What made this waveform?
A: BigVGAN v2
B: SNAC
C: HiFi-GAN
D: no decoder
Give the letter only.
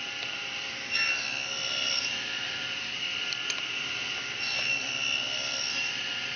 A